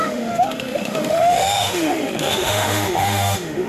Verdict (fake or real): fake